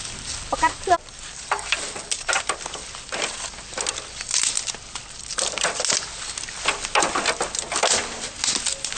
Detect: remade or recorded recorded